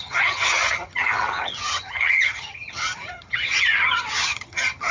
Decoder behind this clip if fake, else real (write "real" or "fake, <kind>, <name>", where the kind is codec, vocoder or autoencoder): fake, vocoder, HiFi-GAN